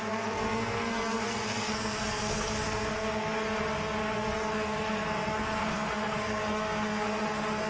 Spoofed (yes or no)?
yes